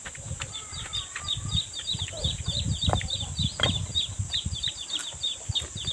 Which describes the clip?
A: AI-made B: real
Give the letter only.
B